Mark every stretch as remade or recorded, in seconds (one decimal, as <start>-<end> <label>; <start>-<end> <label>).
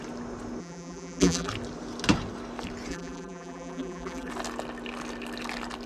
0.0-0.6 recorded; 0.6-1.5 remade; 1.5-2.9 recorded; 2.9-4.3 remade; 4.3-5.9 recorded